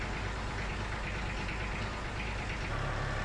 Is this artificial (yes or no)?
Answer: no